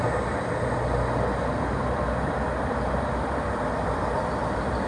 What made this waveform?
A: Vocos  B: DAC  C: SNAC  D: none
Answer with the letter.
D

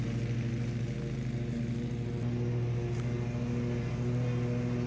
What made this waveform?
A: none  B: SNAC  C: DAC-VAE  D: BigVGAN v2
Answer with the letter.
A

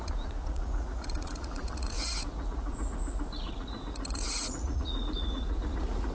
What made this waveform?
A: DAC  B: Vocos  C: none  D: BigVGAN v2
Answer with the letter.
B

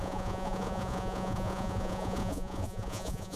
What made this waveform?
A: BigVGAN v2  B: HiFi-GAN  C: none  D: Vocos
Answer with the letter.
D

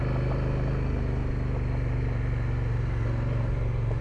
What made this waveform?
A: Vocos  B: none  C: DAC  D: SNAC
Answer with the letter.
B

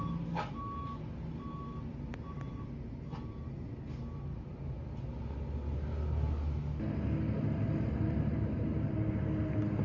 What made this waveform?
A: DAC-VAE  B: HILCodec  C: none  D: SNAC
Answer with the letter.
C